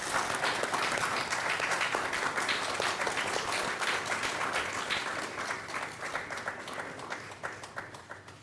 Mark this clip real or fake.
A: real